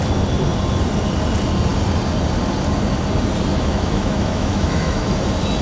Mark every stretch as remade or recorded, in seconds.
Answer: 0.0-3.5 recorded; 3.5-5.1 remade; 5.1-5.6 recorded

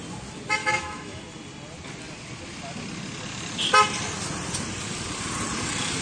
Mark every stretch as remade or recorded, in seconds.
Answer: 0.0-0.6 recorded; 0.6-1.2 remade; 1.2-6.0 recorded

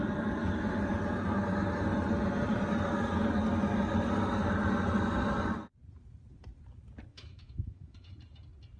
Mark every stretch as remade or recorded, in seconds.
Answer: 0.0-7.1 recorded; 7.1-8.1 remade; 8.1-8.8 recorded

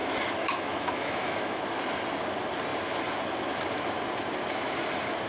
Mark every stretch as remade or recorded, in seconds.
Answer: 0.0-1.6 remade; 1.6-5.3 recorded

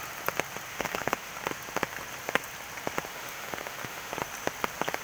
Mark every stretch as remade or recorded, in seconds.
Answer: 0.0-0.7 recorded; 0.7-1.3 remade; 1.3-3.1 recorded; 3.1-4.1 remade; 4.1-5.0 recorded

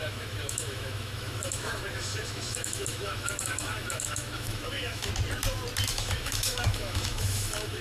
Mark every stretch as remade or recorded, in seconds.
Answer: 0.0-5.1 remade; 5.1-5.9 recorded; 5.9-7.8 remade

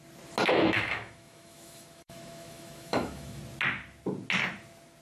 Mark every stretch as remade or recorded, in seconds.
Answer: 0.0-0.4 recorded; 0.4-3.4 remade; 3.4-5.0 recorded